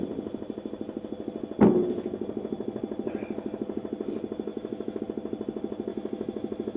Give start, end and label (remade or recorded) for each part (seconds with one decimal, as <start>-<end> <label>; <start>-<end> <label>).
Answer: 0.0-4.5 recorded; 4.5-5.0 remade; 5.0-5.9 recorded; 5.9-6.8 remade